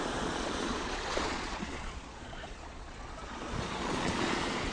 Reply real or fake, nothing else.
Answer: fake